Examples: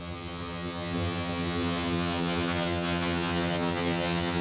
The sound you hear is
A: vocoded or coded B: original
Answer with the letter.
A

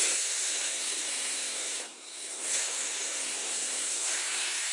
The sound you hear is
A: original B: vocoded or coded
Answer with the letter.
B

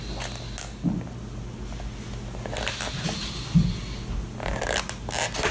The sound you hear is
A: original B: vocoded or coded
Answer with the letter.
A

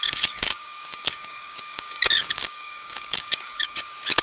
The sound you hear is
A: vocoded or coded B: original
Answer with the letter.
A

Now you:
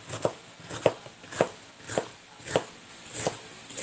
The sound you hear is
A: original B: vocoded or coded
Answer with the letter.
A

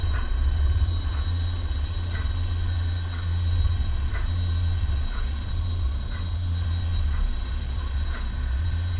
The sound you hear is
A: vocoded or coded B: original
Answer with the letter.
A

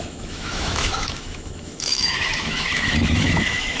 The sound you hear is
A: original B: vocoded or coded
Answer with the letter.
B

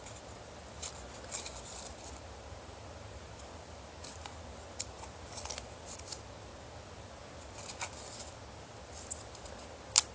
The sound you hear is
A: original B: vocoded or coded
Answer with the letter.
A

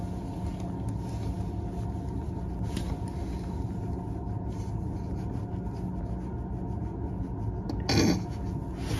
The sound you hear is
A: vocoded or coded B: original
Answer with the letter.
B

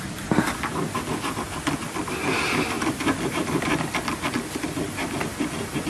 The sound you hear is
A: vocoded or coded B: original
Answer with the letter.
B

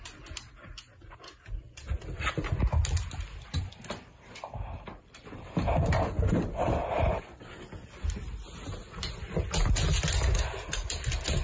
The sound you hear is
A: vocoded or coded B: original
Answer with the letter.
B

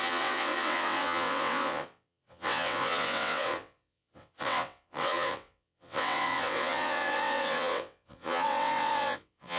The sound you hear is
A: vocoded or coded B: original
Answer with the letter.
A